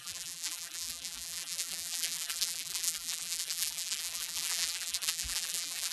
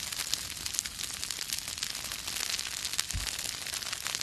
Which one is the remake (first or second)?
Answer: first